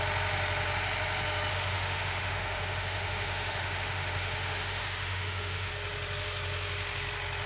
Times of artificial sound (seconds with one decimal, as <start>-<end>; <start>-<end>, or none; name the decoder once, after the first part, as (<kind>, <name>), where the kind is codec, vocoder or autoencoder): 1.5-5.7 (autoencoder, DAC-VAE)